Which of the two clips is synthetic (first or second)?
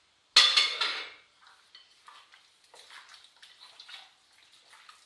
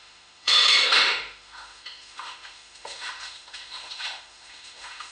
second